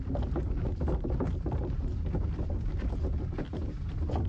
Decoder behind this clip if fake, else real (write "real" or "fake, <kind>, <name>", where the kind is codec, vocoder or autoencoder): real